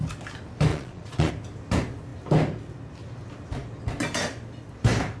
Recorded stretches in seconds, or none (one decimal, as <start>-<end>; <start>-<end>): 0.0-0.7; 1.3-5.2